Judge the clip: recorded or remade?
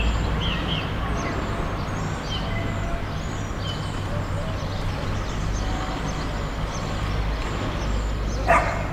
recorded